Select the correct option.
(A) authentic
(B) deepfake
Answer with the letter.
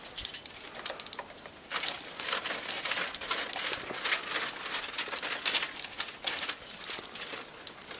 A